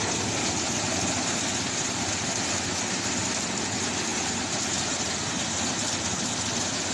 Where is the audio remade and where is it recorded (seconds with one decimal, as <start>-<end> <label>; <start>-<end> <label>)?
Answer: 0.0-6.9 recorded